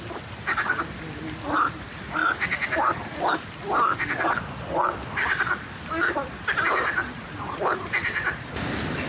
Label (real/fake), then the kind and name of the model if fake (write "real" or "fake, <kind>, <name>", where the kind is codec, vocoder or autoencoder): real